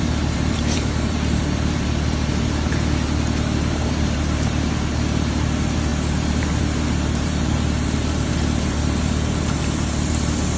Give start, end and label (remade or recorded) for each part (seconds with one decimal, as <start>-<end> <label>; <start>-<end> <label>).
0.0-10.6 remade